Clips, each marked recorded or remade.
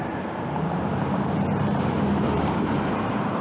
remade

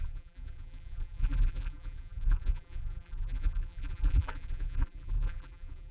remade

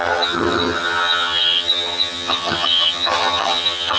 remade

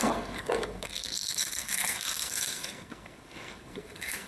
remade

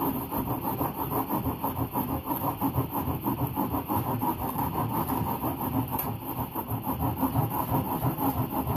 recorded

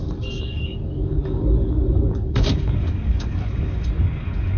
remade